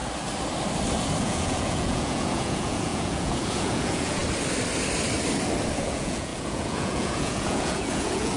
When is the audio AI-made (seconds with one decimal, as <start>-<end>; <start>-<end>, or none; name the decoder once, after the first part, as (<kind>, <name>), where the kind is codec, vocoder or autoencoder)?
1.2-4.2 (vocoder, Vocos); 5.7-8.4